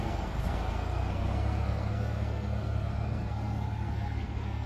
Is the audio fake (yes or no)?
yes